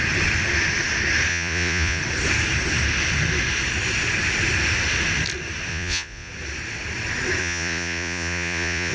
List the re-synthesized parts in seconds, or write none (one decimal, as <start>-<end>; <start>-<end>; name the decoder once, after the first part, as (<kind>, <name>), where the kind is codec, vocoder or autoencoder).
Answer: 1.3-2.0 (vocoder, Vocos); 5.7-6.3; 7.4-8.9